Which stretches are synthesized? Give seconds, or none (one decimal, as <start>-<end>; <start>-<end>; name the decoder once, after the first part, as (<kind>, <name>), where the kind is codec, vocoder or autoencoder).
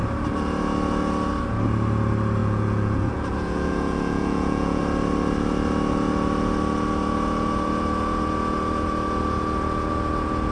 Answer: 2.4-4.8 (vocoder, Vocos)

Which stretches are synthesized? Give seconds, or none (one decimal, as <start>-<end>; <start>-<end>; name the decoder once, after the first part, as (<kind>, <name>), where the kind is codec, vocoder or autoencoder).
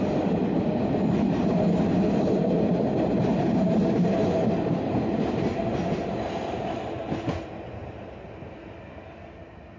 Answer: none